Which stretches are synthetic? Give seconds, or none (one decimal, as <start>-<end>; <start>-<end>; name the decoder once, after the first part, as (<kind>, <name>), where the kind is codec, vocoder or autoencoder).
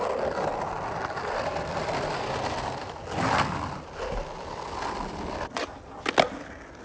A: none